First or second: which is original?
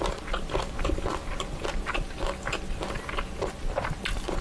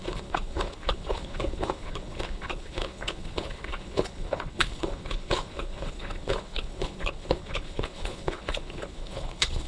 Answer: first